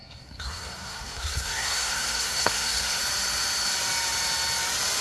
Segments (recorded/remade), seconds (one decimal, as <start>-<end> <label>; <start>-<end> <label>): 0.0-3.0 remade; 3.0-5.0 recorded